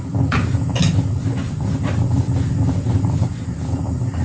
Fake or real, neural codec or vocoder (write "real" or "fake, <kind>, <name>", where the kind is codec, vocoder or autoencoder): real